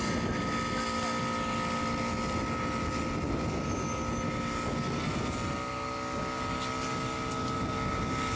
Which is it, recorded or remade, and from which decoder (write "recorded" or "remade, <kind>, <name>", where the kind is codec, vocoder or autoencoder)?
recorded